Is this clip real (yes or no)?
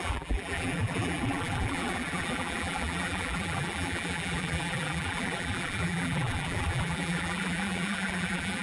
no